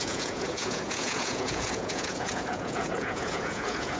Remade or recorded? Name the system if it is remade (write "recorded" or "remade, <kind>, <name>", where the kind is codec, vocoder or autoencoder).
remade, vocoder, Vocos